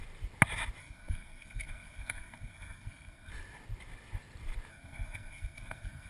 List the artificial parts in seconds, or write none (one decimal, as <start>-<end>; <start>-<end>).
0.8-3.3; 4.7-6.1